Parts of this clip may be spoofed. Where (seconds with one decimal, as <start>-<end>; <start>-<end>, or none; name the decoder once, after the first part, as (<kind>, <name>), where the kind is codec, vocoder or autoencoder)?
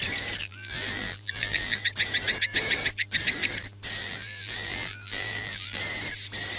0.4-1.8 (vocoder, BigVGAN v2); 4.0-5.8